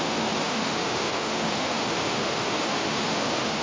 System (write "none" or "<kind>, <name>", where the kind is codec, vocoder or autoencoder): autoencoder, DAC-VAE